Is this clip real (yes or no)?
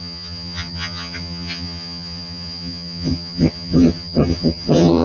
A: no